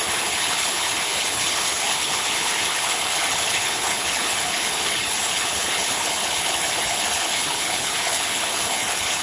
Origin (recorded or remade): remade